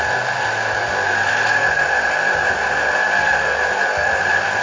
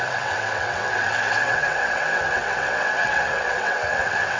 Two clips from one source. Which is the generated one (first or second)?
second